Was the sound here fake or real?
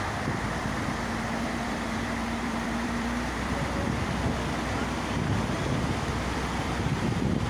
fake